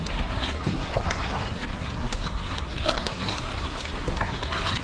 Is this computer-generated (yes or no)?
yes